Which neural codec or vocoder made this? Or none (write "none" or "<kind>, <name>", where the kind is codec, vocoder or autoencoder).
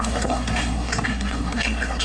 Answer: codec, SNAC